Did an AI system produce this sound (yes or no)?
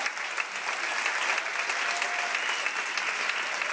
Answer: no